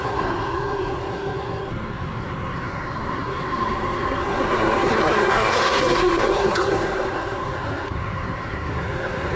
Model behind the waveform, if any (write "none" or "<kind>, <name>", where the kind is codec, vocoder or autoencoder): codec, SNAC